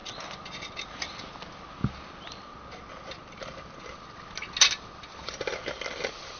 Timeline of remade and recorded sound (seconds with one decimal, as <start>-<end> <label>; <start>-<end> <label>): 0.0-6.4 recorded